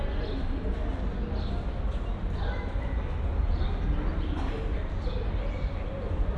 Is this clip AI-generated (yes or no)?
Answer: no